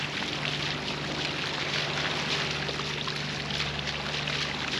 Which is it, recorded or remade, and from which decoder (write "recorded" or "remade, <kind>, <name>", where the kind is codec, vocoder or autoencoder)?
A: recorded